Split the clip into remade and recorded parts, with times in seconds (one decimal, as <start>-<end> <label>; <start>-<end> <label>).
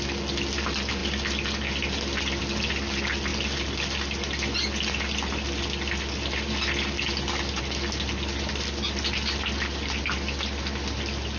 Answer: 0.0-11.4 recorded